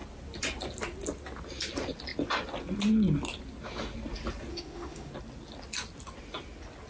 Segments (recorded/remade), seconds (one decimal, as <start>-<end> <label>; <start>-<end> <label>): 0.0-4.5 recorded; 4.5-5.1 remade; 5.1-6.9 recorded